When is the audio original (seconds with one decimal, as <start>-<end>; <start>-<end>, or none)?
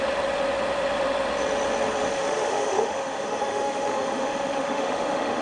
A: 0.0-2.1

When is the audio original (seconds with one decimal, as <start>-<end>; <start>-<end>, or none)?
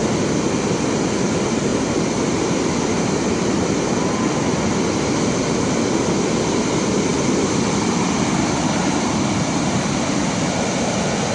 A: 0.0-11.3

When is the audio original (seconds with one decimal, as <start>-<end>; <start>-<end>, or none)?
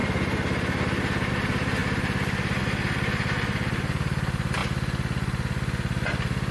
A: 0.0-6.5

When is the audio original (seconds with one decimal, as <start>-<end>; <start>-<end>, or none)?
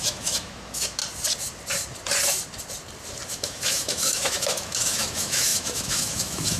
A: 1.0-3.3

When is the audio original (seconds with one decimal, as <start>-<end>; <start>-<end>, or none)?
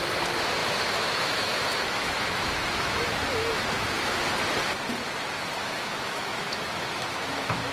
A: 0.0-0.6; 4.1-5.6